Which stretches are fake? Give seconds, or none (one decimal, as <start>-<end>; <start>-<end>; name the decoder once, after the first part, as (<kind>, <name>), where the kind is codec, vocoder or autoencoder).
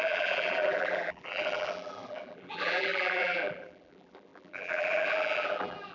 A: 0.0-5.9 (vocoder, BigVGAN v2)